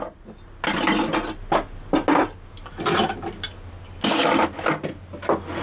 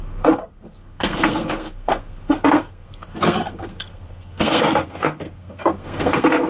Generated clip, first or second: second